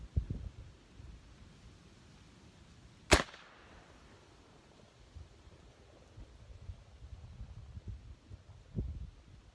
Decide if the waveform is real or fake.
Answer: real